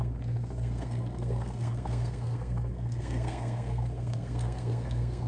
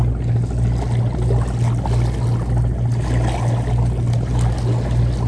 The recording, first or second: second